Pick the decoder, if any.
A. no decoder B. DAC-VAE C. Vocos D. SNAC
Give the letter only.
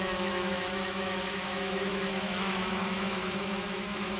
B